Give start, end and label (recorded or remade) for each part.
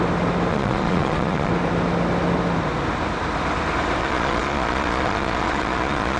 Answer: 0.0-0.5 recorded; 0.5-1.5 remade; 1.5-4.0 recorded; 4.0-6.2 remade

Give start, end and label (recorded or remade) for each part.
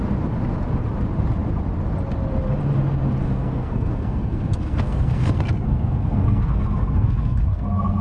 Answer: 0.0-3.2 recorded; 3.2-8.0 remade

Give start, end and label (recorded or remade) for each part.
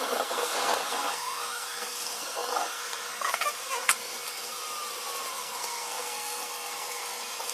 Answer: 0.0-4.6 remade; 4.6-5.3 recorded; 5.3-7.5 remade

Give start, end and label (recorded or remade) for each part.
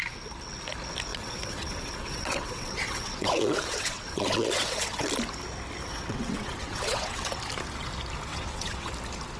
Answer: 0.0-1.1 recorded; 1.1-5.1 remade; 5.1-5.8 recorded; 5.8-7.3 remade; 7.3-8.3 recorded; 8.3-8.9 remade; 8.9-9.4 recorded